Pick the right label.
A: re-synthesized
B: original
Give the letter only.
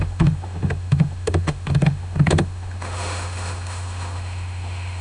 A